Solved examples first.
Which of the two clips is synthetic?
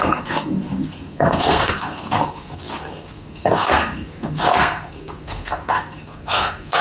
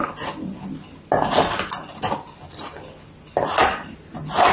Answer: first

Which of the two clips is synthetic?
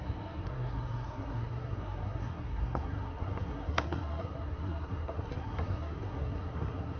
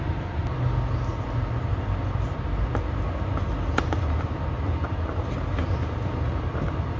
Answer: first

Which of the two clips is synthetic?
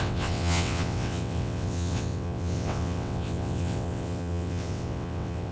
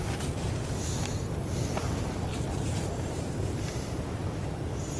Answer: first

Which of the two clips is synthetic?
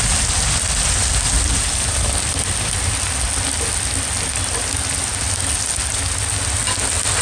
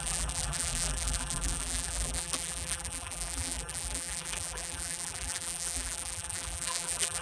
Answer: second